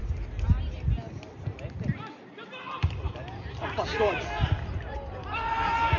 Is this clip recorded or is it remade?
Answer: recorded